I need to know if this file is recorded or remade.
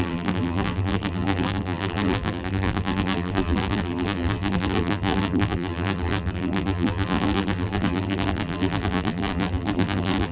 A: remade